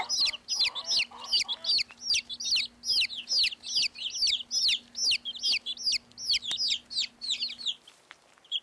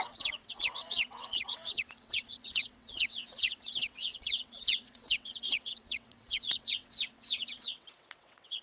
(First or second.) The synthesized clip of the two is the second